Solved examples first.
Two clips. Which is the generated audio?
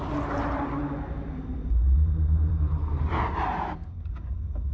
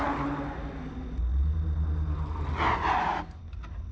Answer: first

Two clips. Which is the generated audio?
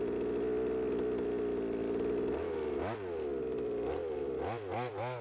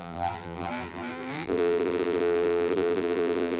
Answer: second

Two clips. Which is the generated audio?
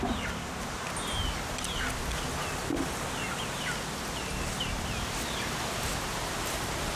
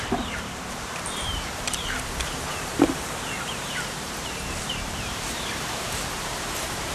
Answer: second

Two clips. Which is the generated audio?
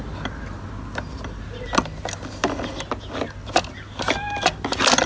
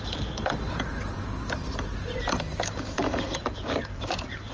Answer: second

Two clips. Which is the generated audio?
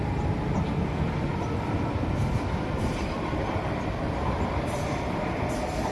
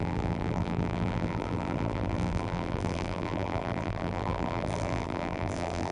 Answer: second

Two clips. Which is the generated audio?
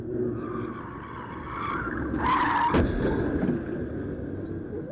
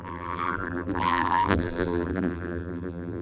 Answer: second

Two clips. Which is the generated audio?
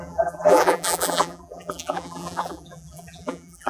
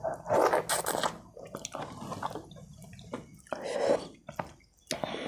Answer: first